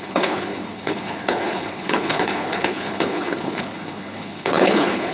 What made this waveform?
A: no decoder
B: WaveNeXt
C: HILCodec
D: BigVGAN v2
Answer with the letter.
C